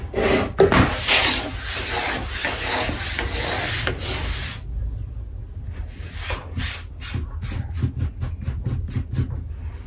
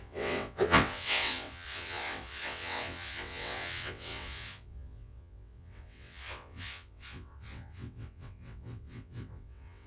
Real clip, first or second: first